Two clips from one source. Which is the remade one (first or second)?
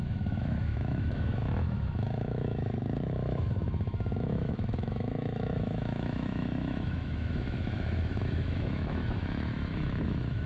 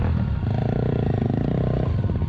first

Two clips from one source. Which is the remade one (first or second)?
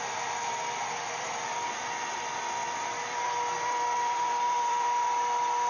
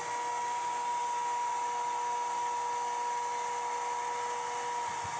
first